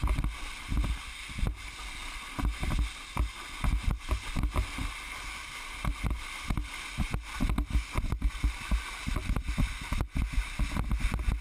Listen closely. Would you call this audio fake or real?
real